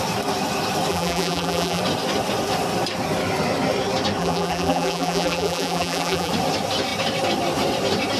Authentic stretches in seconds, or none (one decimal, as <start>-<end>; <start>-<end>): 0.0-0.9; 1.8-4.2; 6.3-8.2